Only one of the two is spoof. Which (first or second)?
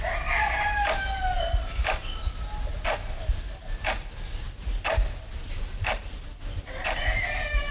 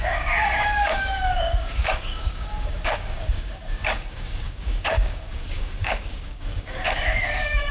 second